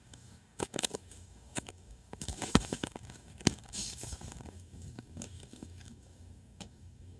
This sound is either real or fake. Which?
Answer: fake